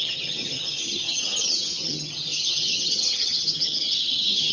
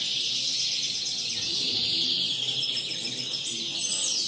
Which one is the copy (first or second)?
first